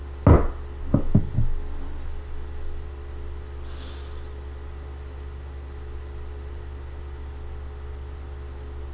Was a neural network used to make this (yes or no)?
no